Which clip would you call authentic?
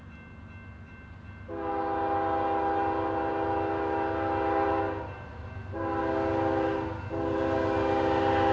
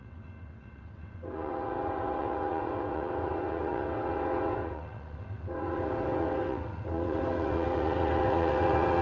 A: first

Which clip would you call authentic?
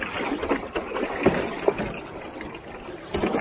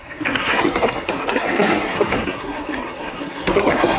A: first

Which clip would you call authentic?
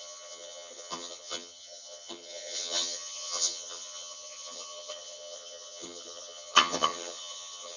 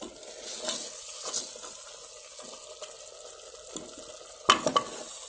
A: second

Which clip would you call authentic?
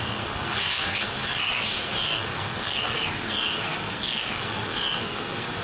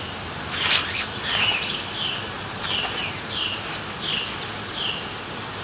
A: second